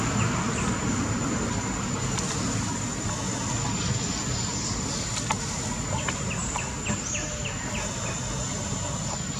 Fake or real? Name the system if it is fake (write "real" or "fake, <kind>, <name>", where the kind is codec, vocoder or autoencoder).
real